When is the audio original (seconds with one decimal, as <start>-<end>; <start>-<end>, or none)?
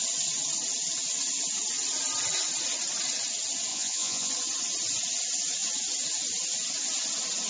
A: 0.0-3.7; 4.3-7.5